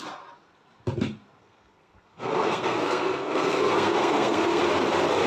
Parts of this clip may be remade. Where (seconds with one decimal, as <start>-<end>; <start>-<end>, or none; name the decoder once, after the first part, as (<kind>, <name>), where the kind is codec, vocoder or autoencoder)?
1.4-4.6 (codec, SNAC)